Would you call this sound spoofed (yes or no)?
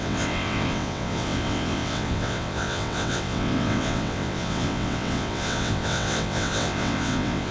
yes